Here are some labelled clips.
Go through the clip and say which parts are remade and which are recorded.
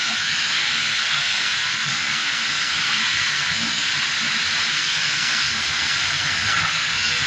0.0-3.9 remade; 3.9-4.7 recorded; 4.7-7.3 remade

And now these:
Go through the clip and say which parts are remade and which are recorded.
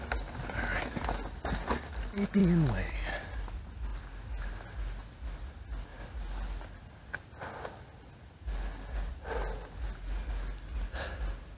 0.0-11.6 recorded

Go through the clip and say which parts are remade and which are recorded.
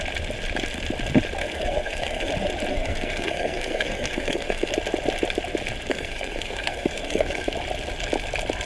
0.0-1.4 recorded; 1.4-2.3 remade; 2.3-2.7 recorded; 2.7-4.7 remade; 4.7-5.9 recorded; 5.9-7.5 remade; 7.5-8.6 recorded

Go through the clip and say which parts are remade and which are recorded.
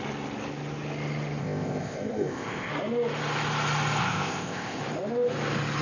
0.0-1.4 recorded; 1.4-2.7 remade; 2.7-4.0 recorded; 4.0-4.8 remade; 4.8-5.8 recorded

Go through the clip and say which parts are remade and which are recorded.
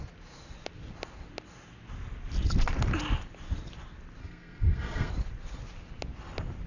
0.0-4.2 recorded; 4.2-5.1 remade; 5.1-6.7 recorded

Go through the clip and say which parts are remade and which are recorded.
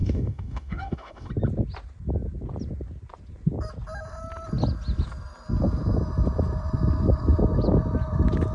0.0-1.3 remade; 1.3-8.5 recorded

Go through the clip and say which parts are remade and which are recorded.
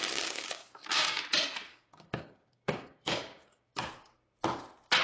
0.0-1.2 remade; 1.2-1.7 recorded; 1.7-3.9 remade; 3.9-5.0 recorded